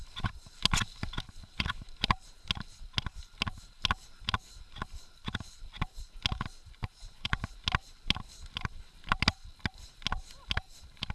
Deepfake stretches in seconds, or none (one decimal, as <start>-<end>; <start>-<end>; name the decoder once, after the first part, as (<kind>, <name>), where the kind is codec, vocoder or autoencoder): 6.9-7.6 (vocoder, Vocos)